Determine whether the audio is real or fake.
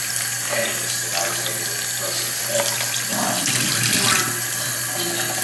real